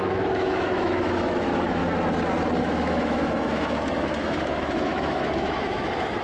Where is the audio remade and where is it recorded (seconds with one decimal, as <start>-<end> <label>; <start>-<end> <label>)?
0.0-1.8 remade; 1.8-2.6 recorded; 2.6-6.2 remade